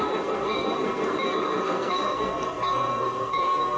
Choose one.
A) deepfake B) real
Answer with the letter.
A